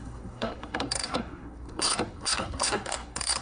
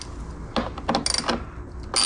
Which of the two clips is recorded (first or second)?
second